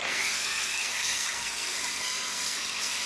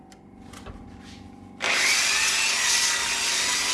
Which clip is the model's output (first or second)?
first